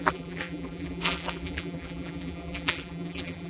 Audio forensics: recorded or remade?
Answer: remade